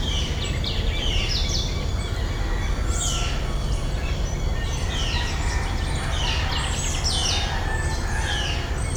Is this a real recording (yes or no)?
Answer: yes